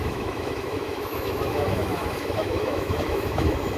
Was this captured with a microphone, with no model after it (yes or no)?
no